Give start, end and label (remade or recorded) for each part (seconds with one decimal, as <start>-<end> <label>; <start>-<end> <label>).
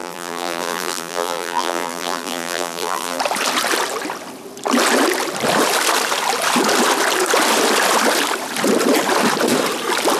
0.0-3.2 remade; 3.2-10.2 recorded